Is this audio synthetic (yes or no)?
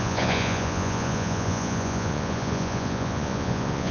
yes